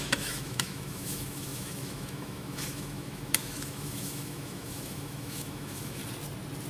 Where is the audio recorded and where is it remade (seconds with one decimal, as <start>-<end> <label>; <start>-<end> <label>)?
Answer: 0.0-6.0 remade; 6.0-6.7 recorded